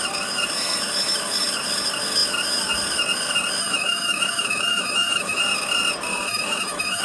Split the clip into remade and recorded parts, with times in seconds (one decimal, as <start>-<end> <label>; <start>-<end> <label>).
0.0-3.6 recorded; 3.6-5.4 remade; 5.4-6.1 recorded; 6.1-7.0 remade